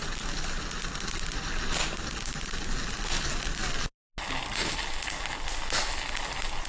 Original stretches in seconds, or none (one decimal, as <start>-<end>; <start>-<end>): 1.8-6.7